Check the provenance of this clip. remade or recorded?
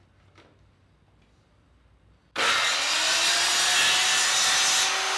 recorded